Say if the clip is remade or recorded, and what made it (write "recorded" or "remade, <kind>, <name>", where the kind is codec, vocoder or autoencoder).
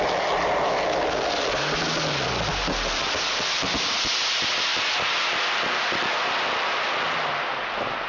recorded